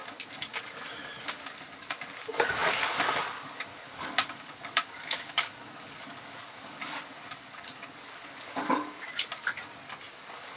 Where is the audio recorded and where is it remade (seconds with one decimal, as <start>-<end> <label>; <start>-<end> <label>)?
0.0-9.6 remade; 9.6-10.1 recorded; 10.1-10.6 remade